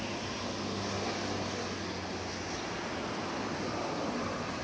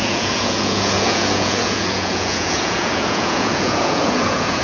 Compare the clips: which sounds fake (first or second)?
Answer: second